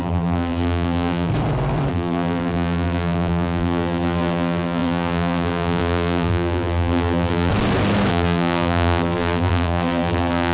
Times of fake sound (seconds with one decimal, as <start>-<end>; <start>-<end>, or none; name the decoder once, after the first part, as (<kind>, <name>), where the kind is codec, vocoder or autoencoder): 0.0-1.3 (vocoder, BigVGAN v2); 1.9-7.5; 8.1-10.5